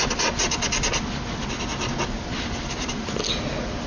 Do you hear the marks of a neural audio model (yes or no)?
no